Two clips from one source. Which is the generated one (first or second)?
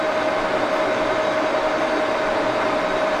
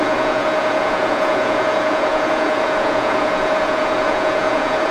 second